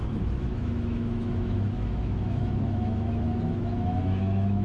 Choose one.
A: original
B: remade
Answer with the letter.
B